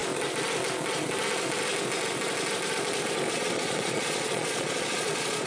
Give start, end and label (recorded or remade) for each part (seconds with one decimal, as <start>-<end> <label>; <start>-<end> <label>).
0.0-3.3 recorded; 3.3-5.5 remade